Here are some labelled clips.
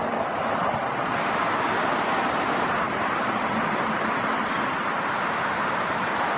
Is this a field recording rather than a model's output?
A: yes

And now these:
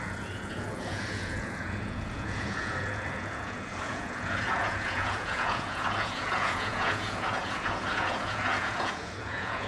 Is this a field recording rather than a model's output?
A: no